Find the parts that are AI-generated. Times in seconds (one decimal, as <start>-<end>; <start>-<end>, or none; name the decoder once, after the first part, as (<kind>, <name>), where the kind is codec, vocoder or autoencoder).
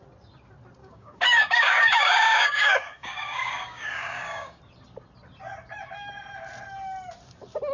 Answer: 0.8-4.6 (codec, DAC)